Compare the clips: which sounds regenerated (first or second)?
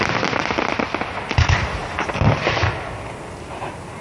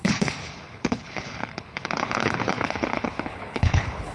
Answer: second